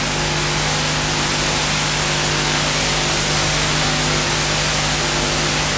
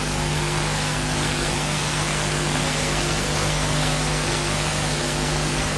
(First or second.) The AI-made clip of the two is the second